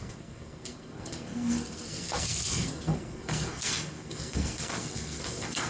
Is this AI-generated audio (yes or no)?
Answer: yes